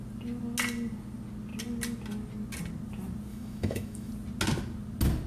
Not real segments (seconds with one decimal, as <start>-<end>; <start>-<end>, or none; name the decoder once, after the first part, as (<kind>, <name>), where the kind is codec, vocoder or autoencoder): 3.3-4.1 (autoencoder, DAC-VAE)